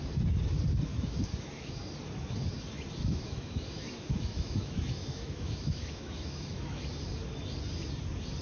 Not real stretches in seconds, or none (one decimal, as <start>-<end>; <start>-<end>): 0.9-1.7; 3.0-6.8